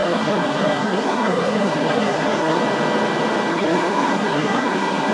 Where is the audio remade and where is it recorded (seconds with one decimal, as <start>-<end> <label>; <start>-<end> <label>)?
0.0-2.6 remade; 2.6-3.5 recorded; 3.5-5.1 remade